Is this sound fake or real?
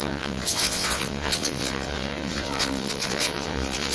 fake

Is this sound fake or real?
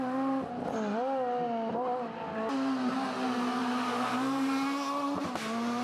real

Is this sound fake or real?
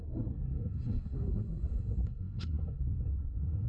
fake